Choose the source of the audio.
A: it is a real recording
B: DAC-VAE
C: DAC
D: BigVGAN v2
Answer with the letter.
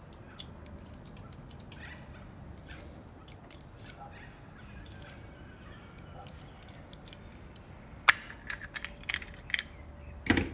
A